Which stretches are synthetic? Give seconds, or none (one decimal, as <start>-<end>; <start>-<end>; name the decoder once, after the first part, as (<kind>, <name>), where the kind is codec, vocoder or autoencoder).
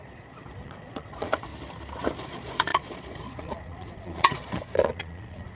0.0-1.5 (vocoder, Vocos); 2.2-5.5